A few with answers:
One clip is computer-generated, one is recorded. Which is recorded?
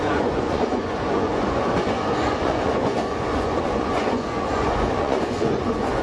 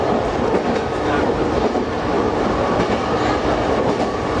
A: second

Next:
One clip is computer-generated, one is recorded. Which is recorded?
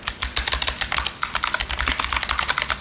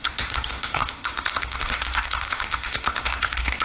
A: first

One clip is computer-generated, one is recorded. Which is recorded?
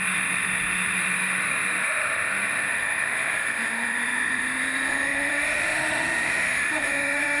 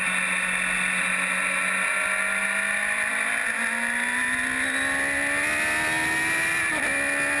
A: second